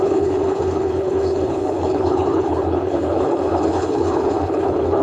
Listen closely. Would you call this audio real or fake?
fake